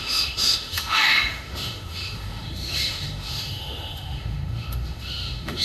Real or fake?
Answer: fake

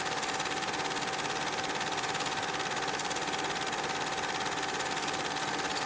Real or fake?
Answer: real